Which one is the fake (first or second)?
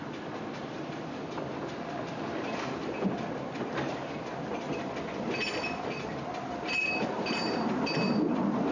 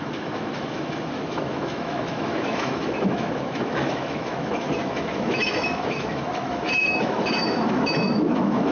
second